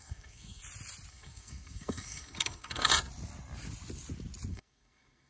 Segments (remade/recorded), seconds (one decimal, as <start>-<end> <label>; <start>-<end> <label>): 0.0-0.6 remade; 0.6-1.1 recorded; 1.1-2.9 remade; 2.9-4.5 recorded; 4.5-5.3 remade